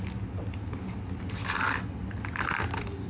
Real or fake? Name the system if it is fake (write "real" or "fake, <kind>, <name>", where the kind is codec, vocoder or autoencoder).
real